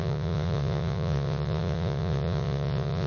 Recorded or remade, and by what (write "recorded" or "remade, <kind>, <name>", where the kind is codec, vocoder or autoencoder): remade, vocoder, Vocos